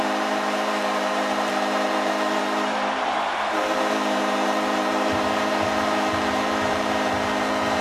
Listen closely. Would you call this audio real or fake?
fake